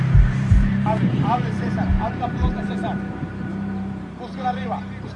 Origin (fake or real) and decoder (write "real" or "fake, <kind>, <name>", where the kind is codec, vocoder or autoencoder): fake, vocoder, BigVGAN v2